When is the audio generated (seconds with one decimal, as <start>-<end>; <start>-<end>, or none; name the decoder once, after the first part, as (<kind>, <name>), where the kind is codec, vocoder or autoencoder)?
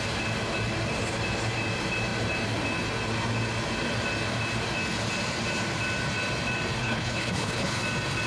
6.8-7.8 (codec, HILCodec)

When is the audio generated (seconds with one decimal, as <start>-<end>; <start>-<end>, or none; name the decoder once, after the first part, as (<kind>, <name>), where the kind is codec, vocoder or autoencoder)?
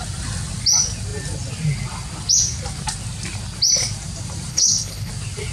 4.5-5.1 (codec, HILCodec)